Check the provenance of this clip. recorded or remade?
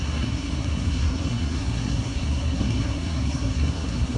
remade